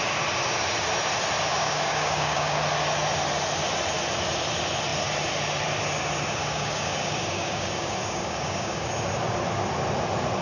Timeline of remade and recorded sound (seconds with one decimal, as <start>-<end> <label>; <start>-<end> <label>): 0.0-1.6 recorded; 1.6-2.6 remade; 2.6-6.4 recorded; 6.4-8.9 remade; 8.9-10.4 recorded